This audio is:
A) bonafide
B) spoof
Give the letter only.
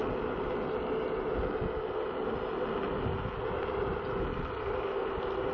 A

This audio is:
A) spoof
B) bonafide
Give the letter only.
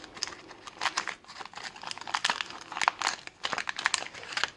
B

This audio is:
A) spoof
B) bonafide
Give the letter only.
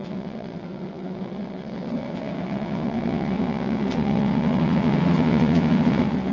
A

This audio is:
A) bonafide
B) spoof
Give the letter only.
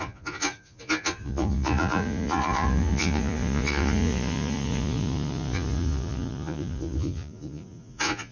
B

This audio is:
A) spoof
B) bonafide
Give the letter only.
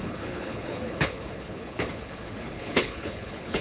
A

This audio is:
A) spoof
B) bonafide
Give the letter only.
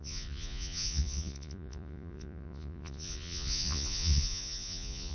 A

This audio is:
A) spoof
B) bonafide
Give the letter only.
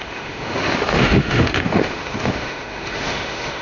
A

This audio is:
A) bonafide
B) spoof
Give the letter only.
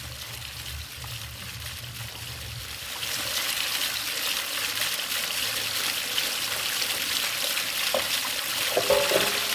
A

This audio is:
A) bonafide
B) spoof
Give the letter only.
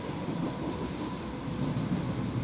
A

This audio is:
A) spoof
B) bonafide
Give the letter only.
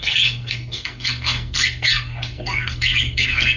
A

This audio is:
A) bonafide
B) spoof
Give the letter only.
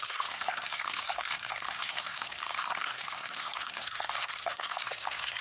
B